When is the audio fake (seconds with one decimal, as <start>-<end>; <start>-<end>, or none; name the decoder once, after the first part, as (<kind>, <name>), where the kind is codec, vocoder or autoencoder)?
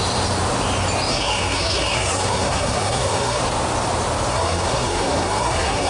1.1-3.4 (codec, SNAC); 4.3-5.9